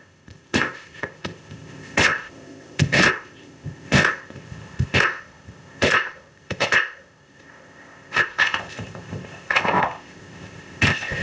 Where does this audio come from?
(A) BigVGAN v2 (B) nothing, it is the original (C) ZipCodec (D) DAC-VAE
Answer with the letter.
C